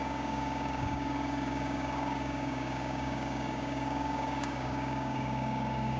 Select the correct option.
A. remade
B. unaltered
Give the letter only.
A